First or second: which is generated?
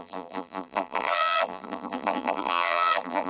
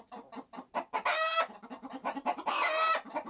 first